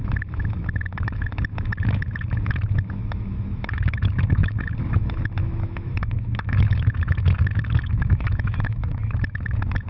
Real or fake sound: fake